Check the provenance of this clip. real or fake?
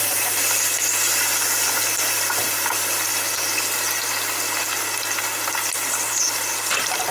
real